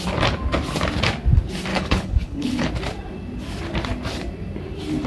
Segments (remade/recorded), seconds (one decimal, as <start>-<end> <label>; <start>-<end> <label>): 0.0-1.7 recorded; 1.7-2.7 remade; 2.7-5.1 recorded